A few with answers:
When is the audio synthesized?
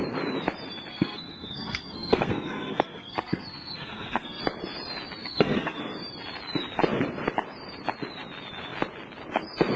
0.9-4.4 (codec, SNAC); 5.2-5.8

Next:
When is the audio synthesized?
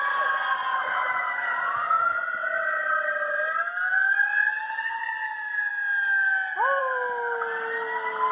0.6-1.3 (vocoder, Vocos)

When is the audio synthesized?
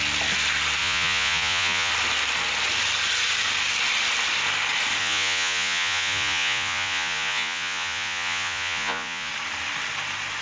0.8-1.9 (vocoder, Vocos); 5.0-9.3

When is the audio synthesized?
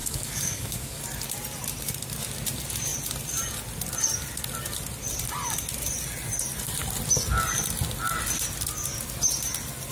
0.0-1.0 (codec, DAC)